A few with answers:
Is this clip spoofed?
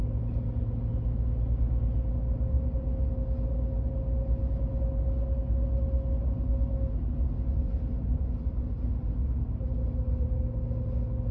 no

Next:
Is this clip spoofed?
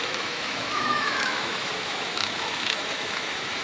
yes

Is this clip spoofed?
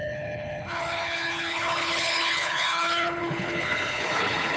yes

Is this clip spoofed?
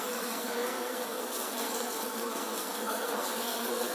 yes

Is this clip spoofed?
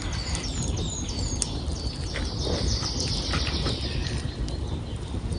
no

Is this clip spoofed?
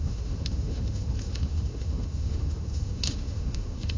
yes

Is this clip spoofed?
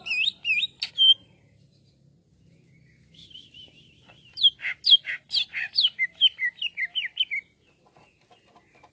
no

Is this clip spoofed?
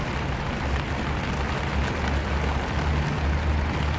no